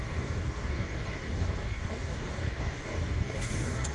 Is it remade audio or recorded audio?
remade